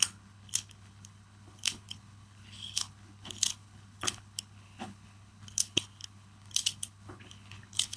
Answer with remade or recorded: remade